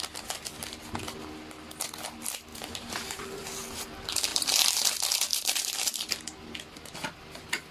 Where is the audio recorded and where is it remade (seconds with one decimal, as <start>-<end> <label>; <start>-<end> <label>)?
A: 0.0-2.5 recorded; 2.5-3.2 remade; 3.2-4.3 recorded; 4.3-4.8 remade; 4.8-5.3 recorded; 5.3-6.6 remade; 6.6-7.7 recorded